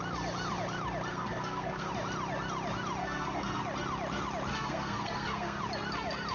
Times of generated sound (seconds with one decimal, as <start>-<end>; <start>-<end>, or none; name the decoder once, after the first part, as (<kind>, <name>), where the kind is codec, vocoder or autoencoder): 1.1-1.9 (codec, SNAC); 3.0-3.6; 4.5-5.6